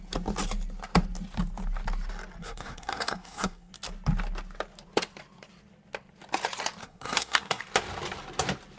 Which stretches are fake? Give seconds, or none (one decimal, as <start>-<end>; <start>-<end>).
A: 2.4-3.7; 6.8-7.6